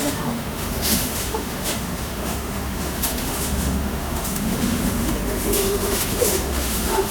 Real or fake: fake